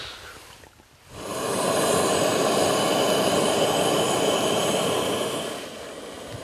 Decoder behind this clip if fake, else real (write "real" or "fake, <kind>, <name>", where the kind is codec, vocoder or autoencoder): real